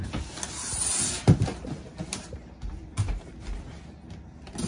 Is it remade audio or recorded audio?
recorded